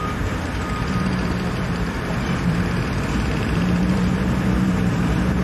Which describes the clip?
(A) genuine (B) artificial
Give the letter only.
B